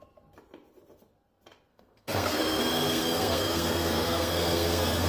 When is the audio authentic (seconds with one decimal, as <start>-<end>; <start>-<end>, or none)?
0.0-1.7

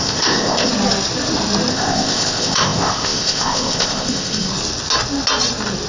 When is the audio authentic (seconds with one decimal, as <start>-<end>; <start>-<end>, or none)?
0.7-1.7; 4.5-5.9

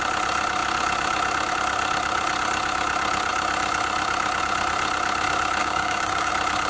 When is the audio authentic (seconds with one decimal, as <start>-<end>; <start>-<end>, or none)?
0.0-5.6; 6.3-6.7

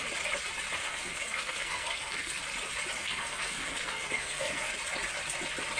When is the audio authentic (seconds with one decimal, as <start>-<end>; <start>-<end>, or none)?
0.0-0.8; 2.4-3.0; 4.7-5.8

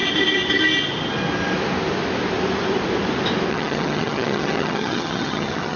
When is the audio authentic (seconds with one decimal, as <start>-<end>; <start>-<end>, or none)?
0.0-3.5

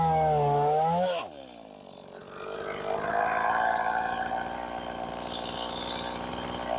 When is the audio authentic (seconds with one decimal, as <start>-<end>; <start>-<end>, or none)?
0.0-6.8

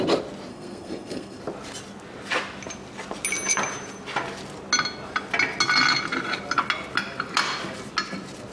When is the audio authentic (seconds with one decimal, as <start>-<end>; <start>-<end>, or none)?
0.0-0.5; 1.4-8.5